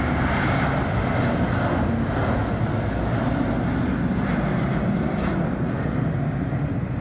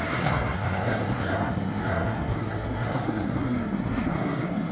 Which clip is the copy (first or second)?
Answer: second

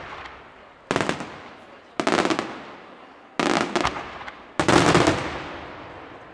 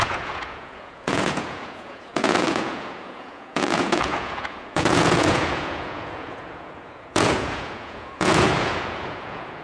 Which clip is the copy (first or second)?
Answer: second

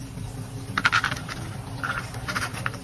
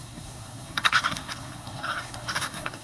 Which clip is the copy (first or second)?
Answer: second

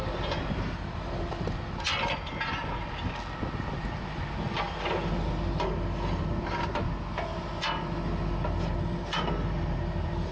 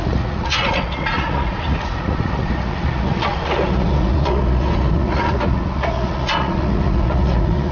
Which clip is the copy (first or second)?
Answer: second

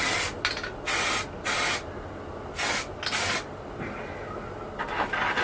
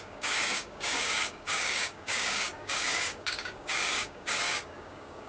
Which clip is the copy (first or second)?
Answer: second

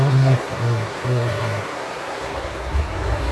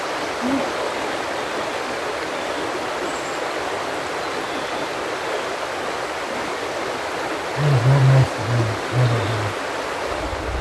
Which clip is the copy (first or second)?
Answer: first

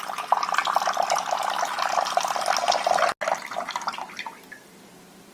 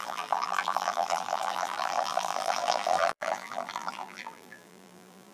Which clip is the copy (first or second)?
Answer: second